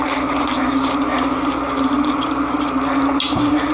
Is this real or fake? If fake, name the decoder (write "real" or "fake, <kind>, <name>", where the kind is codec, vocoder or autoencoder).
real